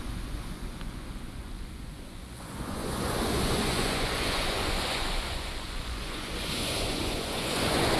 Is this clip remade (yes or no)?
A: yes